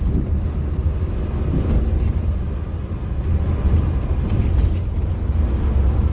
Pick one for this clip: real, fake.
real